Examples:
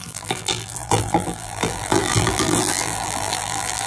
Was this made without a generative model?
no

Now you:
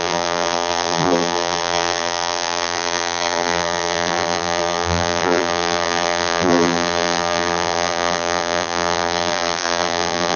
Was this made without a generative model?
no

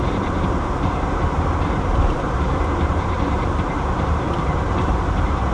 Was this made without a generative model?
no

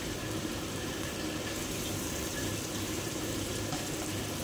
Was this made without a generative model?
no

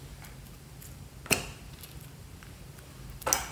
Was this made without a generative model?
yes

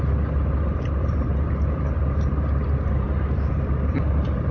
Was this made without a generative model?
no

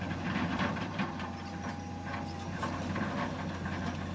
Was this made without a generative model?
yes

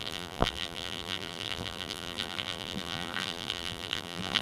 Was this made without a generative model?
no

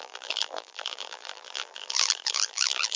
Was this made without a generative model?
no